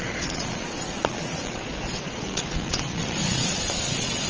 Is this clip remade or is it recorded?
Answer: remade